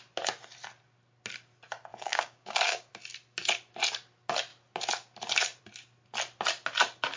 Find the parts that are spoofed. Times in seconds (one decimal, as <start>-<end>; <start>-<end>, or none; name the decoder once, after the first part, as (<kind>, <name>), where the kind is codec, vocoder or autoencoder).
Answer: 1.9-2.9 (codec, DAC)